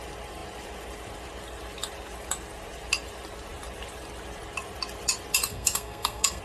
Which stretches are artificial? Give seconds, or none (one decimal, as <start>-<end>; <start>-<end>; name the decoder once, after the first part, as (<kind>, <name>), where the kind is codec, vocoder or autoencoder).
5.5-6.4 (codec, SNAC)